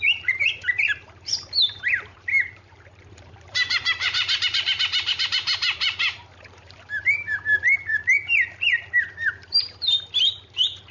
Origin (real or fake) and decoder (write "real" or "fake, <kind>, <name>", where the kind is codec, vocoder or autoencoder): fake, vocoder, BigVGAN v2